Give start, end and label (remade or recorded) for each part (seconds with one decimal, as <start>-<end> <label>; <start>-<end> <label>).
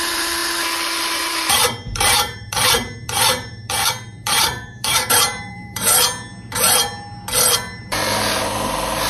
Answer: 0.0-0.4 remade; 0.4-1.0 recorded; 1.0-5.9 remade; 5.9-7.8 recorded; 7.8-9.1 remade